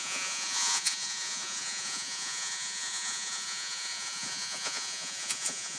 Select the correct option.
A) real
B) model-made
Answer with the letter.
B